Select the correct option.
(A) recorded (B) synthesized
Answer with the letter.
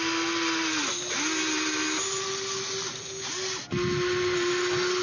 A